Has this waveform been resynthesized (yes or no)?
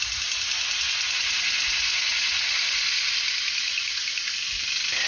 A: no